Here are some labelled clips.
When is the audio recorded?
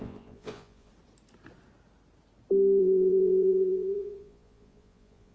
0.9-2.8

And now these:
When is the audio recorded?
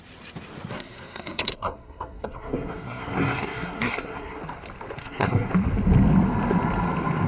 0.0-0.7; 4.4-5.0; 5.5-7.3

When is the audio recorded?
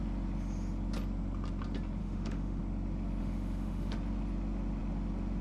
0.0-2.0; 2.6-3.2; 3.9-5.4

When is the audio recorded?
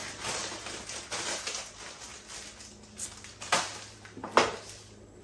0.0-5.2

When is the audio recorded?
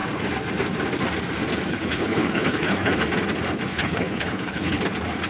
0.0-1.7; 3.0-3.7; 4.8-5.3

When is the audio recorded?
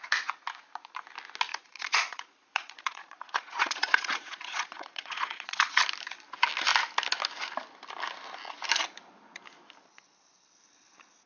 0.0-1.5; 5.8-11.3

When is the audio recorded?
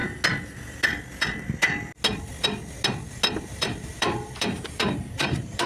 0.0-3.4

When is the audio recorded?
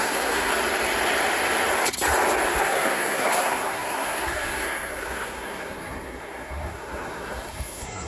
0.5-2.6